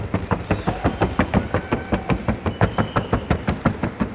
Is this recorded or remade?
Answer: recorded